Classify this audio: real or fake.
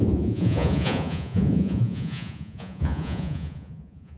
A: fake